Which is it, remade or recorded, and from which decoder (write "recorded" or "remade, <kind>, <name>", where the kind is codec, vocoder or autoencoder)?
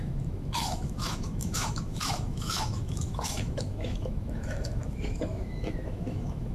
remade, autoencoder, DAC-VAE